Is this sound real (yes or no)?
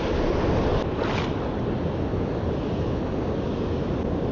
yes